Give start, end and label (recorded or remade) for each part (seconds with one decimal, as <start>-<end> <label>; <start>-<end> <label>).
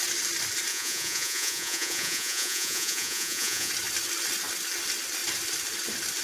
0.0-0.7 recorded; 0.7-3.7 remade; 3.7-6.2 recorded